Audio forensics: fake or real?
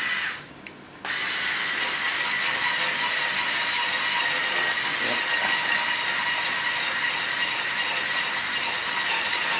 real